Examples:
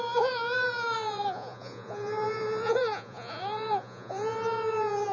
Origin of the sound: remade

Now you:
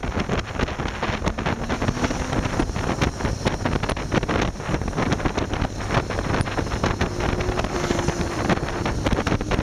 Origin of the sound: recorded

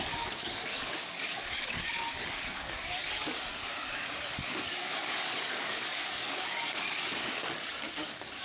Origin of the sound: remade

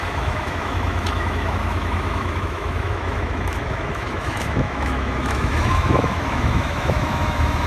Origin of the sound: remade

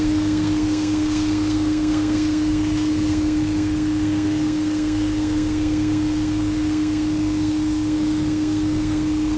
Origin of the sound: remade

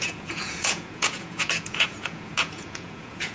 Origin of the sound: remade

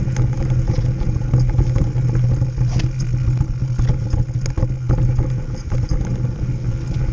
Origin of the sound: recorded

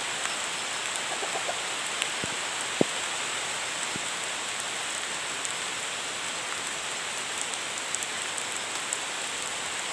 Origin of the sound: recorded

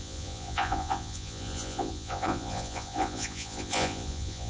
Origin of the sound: remade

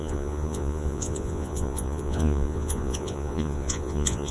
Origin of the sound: remade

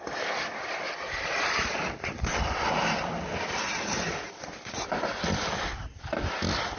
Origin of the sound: recorded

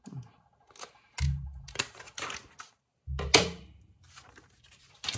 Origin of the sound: recorded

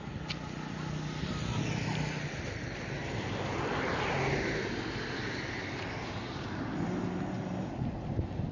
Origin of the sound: recorded